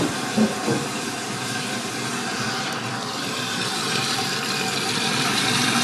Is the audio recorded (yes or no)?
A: no